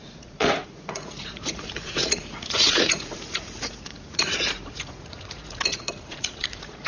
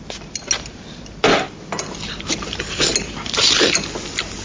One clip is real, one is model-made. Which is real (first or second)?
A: second